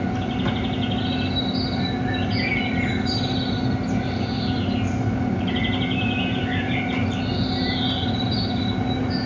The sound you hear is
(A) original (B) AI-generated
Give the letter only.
A